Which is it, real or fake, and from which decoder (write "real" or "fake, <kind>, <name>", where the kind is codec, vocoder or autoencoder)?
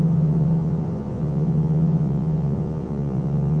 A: fake, vocoder, Vocos